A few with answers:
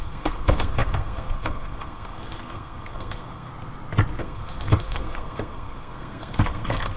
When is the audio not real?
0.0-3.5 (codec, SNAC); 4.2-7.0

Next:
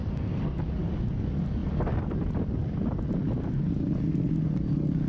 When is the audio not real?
0.0-0.6 (codec, SNAC)

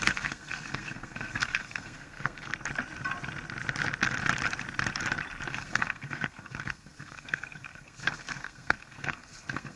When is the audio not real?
0.0-2.5 (codec, SNAC); 5.5-9.8